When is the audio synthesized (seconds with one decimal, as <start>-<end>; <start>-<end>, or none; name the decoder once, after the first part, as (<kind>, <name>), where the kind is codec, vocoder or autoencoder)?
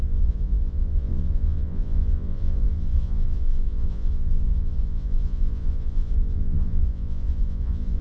0.0-8.0 (vocoder, Vocos)